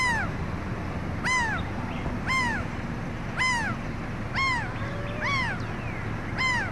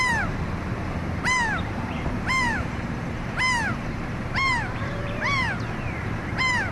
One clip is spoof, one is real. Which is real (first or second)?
first